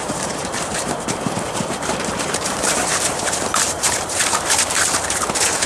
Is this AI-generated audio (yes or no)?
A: yes